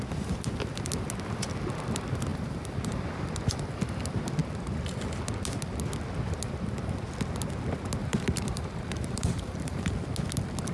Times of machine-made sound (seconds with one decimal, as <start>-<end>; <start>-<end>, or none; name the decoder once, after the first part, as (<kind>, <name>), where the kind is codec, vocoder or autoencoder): 2.3-3.2 (vocoder, BigVGAN v2); 8.0-9.9